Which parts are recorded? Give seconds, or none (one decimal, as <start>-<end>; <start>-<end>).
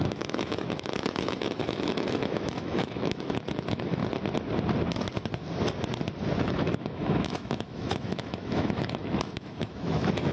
4.0-6.4